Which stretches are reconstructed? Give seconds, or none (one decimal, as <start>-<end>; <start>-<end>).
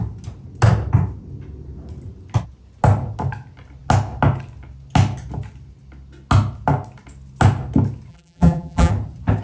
8.1-8.9